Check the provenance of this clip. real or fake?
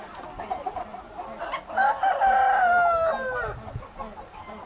real